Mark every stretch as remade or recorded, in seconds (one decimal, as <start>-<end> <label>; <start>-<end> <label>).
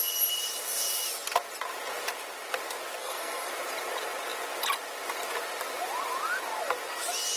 0.0-3.0 recorded; 3.0-3.5 remade; 3.5-7.4 recorded